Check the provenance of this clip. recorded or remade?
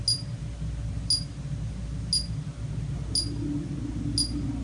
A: recorded